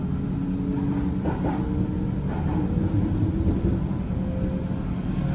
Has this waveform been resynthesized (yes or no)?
no